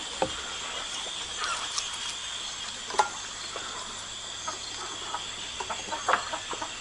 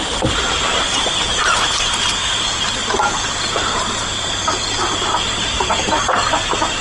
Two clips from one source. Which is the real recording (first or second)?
first